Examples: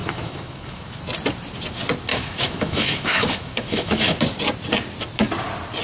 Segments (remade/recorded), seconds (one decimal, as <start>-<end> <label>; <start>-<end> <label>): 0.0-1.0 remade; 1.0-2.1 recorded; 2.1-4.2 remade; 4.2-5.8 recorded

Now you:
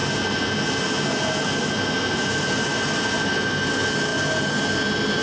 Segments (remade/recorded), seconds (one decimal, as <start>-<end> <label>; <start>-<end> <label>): 0.0-5.2 recorded

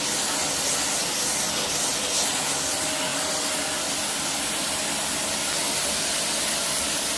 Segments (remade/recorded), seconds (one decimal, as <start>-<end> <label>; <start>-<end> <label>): 0.0-7.2 recorded

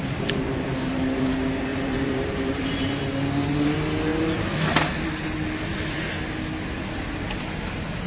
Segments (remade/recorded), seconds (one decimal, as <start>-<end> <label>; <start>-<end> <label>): 0.0-1.7 recorded; 1.7-3.0 remade; 3.0-8.1 recorded

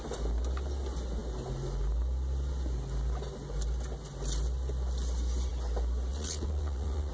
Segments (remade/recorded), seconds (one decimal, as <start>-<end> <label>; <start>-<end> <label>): 0.0-6.1 recorded; 6.1-7.1 remade

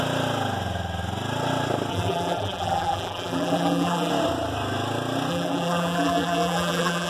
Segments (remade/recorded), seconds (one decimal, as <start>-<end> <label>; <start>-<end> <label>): 0.0-1.9 recorded; 1.9-4.1 remade; 4.1-5.3 recorded; 5.3-7.1 remade